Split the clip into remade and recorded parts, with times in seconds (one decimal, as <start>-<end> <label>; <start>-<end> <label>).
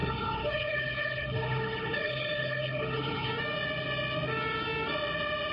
0.0-3.3 remade; 3.3-5.5 recorded